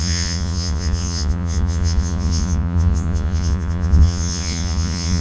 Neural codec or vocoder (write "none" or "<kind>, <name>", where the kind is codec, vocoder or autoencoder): vocoder, Vocos